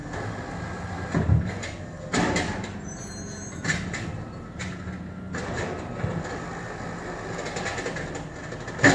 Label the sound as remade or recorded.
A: recorded